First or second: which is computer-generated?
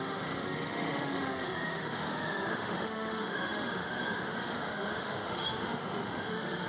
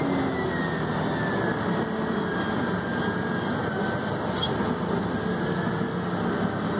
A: first